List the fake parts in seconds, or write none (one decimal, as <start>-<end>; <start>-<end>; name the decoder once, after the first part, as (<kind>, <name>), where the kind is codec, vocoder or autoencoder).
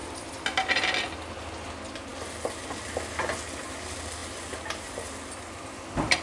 none